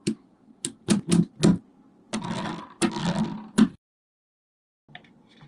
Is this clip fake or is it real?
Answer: real